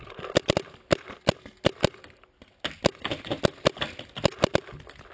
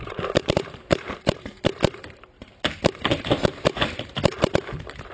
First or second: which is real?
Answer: first